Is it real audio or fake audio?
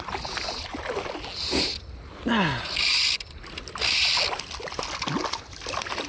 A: real